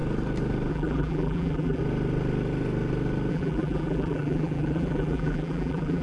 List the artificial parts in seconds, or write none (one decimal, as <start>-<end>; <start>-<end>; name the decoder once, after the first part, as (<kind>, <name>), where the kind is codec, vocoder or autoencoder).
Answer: 0.7-1.8 (vocoder, BigVGAN v2); 3.3-6.0